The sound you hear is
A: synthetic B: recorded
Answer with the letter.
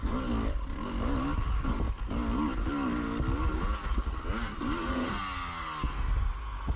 B